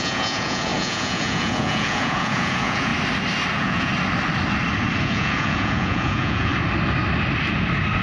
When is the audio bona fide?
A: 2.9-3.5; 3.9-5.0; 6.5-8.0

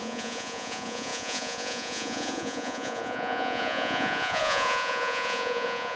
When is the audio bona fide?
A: none

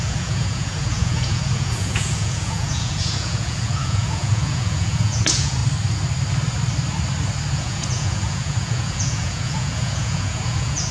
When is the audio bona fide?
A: 5.6-7.5

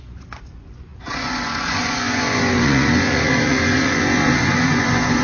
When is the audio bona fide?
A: none

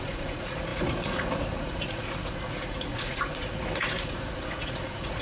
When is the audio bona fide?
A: none